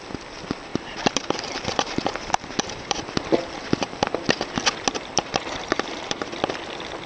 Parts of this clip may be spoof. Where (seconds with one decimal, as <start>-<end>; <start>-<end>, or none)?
0.7-3.0; 5.1-6.3